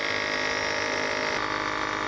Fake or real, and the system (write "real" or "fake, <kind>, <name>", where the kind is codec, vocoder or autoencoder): real